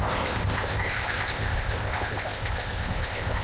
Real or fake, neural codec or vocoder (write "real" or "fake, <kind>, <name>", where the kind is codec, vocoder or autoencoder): fake, codec, ZipCodec